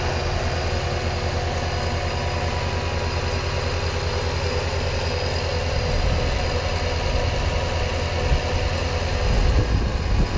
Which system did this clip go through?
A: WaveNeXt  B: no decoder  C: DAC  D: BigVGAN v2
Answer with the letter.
B